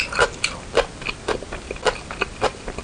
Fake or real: real